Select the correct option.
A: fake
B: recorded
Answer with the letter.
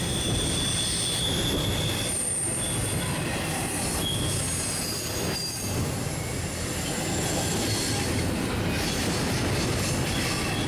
B